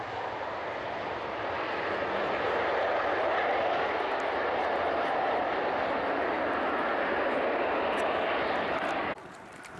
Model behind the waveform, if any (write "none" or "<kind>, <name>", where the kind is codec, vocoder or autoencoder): none